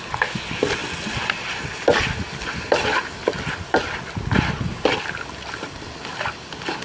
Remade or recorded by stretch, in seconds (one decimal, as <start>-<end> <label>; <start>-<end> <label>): 0.0-6.8 recorded